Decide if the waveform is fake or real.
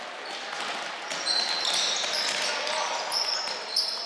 real